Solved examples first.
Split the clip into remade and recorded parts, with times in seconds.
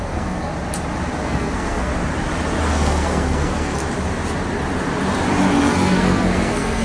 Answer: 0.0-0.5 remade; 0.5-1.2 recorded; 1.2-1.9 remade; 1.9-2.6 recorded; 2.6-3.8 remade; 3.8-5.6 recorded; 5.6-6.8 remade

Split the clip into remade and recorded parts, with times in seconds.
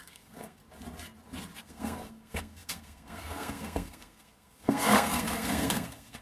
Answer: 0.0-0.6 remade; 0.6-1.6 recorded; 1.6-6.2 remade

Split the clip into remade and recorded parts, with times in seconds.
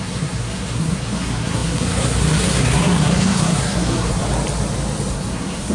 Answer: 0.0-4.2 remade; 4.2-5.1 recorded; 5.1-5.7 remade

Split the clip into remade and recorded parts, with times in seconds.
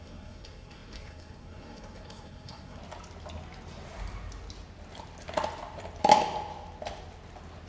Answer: 0.0-2.8 remade; 2.8-7.7 recorded